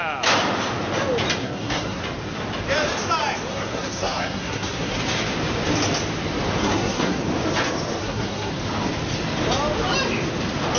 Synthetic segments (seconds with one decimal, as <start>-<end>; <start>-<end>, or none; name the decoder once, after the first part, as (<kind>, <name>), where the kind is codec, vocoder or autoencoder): 1.4-2.0 (codec, SNAC); 3.5-5.0; 6.6-7.2; 8.0-8.5